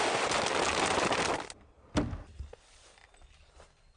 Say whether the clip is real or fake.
real